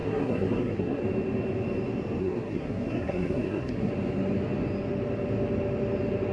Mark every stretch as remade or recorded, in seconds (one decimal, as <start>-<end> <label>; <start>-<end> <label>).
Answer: 0.0-1.0 remade; 1.0-2.2 recorded; 2.2-3.9 remade; 3.9-6.3 recorded